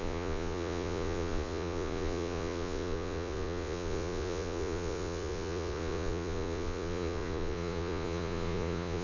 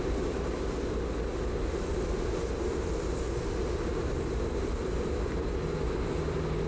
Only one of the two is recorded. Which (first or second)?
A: second